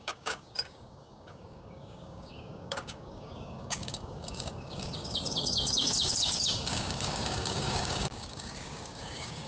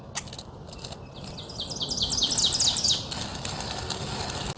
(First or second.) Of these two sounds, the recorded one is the second